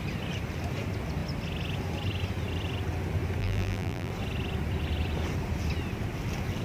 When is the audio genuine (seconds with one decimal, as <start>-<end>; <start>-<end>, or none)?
0.0-3.4; 4.1-6.6